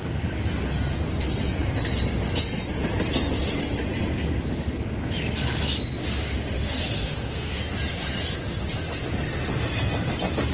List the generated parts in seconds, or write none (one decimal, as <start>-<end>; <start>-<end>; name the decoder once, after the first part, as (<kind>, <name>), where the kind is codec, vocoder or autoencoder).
6.0-7.6 (autoencoder, DAC-VAE)